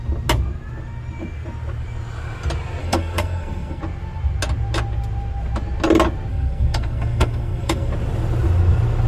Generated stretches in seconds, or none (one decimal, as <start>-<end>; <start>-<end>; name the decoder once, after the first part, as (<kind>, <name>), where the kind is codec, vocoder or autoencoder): 2.8-3.8 (codec, SNAC); 6.3-7.9